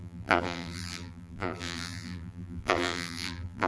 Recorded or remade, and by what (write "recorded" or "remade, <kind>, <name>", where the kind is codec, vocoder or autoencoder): remade, vocoder, BigVGAN v2